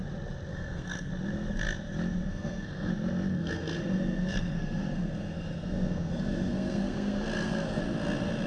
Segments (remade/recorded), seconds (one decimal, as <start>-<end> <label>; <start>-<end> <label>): 0.0-0.5 recorded; 0.5-1.1 remade; 1.1-2.3 recorded; 2.3-2.9 remade; 2.9-3.3 recorded; 3.3-7.8 remade; 7.8-8.5 recorded